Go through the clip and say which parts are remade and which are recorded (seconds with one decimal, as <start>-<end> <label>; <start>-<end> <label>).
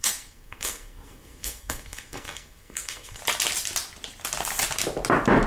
0.0-3.2 remade; 3.2-5.5 recorded